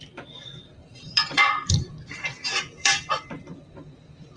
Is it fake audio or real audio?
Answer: fake